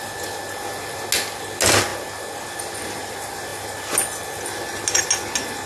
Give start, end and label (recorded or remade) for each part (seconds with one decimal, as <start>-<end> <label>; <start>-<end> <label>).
0.0-5.7 recorded